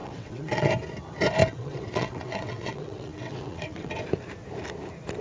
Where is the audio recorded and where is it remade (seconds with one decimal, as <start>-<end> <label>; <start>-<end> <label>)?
0.0-0.7 remade; 0.7-1.4 recorded; 1.4-3.9 remade; 3.9-5.2 recorded